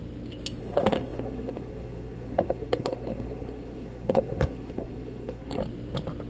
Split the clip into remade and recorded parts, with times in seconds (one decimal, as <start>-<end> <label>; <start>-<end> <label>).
0.0-0.6 recorded; 0.6-5.6 remade; 5.6-6.3 recorded

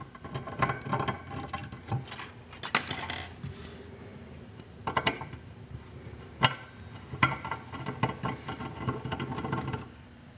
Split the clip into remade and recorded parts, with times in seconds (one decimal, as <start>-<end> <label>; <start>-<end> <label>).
0.0-10.4 recorded

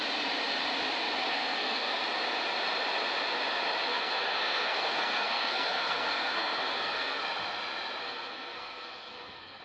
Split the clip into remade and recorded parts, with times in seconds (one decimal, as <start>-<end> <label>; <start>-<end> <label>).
0.0-1.3 recorded; 1.3-2.0 remade; 2.0-3.9 recorded; 3.9-7.2 remade; 7.2-8.0 recorded; 8.0-9.6 remade

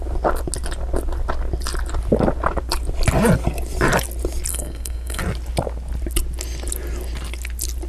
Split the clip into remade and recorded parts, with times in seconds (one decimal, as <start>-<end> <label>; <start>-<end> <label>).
0.0-4.5 recorded; 4.5-5.2 remade; 5.2-7.9 recorded

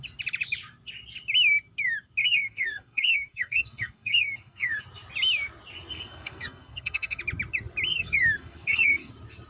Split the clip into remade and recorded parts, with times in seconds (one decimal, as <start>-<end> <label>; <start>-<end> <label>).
0.0-2.2 recorded; 2.2-4.8 remade; 4.8-5.9 recorded; 5.9-7.2 remade; 7.2-7.9 recorded; 7.9-9.1 remade; 9.1-9.5 recorded

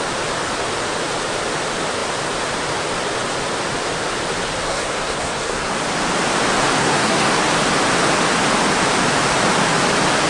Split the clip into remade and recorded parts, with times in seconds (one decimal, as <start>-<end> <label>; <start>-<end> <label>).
0.0-4.7 recorded; 4.7-5.7 remade; 5.7-6.8 recorded; 6.8-7.3 remade; 7.3-10.3 recorded